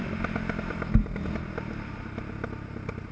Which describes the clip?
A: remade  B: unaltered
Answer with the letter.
B